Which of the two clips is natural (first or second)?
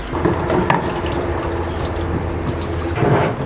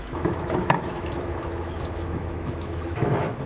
first